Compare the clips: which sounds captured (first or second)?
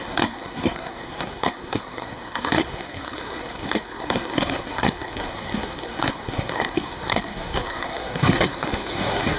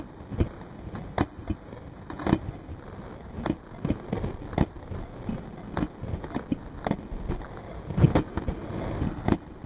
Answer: second